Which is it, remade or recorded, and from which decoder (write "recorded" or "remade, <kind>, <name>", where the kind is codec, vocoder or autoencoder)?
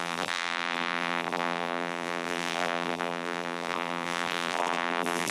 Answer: remade, vocoder, BigVGAN v2